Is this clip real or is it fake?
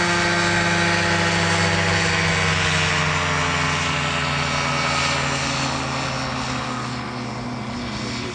real